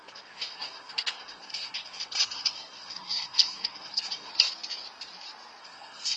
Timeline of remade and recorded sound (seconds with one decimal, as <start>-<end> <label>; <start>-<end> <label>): 0.0-4.3 remade; 4.3-5.6 recorded; 5.6-6.2 remade